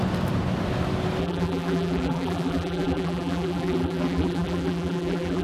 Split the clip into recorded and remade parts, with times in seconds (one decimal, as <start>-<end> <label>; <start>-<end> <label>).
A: 0.0-1.2 recorded; 1.2-5.4 remade